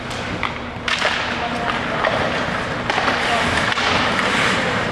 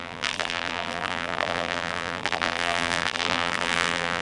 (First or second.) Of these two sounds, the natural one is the first